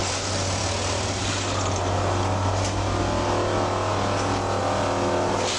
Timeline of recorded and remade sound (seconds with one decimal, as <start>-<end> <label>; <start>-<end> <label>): 0.0-5.6 recorded